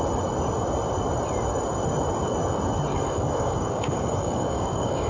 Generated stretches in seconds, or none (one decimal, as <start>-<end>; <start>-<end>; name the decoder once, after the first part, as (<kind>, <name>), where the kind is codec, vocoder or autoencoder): 2.9-5.1 (codec, DAC)